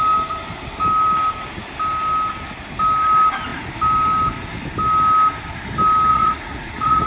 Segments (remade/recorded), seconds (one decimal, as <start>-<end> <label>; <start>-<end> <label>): 0.0-6.1 recorded; 6.1-7.1 remade